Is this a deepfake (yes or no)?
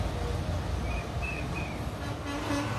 no